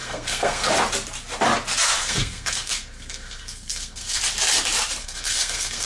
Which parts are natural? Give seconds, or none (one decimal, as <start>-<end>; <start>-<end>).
0.7-2.0; 4.2-5.0

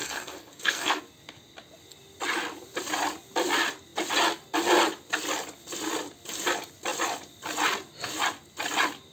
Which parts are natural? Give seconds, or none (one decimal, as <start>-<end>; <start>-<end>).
1.0-9.1

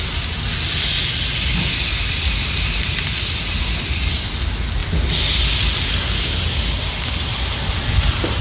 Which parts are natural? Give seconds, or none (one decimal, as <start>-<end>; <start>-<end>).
0.0-4.8; 5.8-8.4

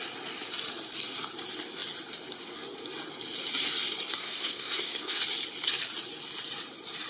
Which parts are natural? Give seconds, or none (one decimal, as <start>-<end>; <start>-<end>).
0.0-4.2; 5.2-7.1

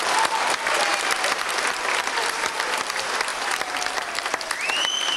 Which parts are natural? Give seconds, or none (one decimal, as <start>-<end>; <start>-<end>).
none